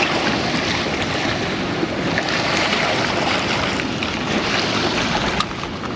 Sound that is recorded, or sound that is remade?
recorded